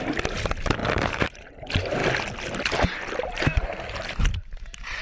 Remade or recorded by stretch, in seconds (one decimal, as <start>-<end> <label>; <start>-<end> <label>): 0.0-0.8 recorded; 0.8-1.6 remade; 1.6-4.3 recorded; 4.3-5.0 remade